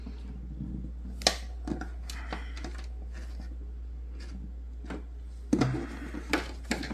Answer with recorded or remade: recorded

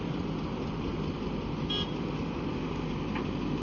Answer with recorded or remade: recorded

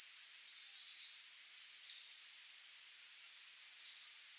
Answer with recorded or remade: recorded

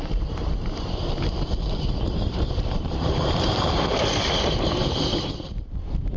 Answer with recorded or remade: remade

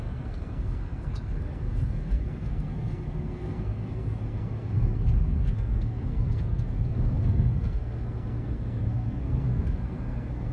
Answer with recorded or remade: remade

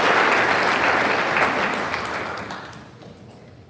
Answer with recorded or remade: recorded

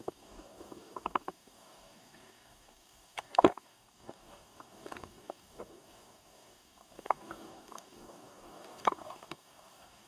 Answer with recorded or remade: remade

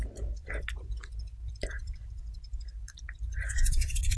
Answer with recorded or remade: remade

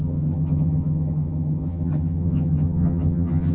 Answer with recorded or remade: remade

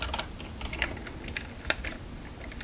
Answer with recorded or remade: recorded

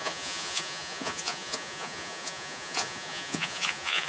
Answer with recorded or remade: remade